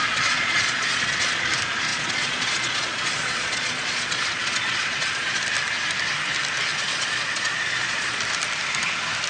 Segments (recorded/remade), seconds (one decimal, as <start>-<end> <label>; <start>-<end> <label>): 0.0-1.5 remade; 1.5-1.9 recorded; 1.9-5.4 remade; 5.4-6.7 recorded; 6.7-8.2 remade; 8.2-9.3 recorded